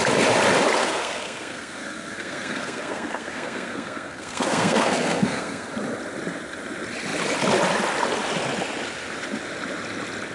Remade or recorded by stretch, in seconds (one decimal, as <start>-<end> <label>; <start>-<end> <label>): 0.0-0.8 recorded; 0.8-5.7 remade; 5.7-10.3 recorded